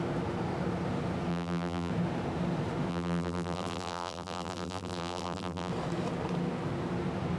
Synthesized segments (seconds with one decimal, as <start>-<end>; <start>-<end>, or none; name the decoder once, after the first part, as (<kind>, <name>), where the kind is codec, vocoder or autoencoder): 1.3-1.9 (vocoder, BigVGAN v2); 2.9-5.7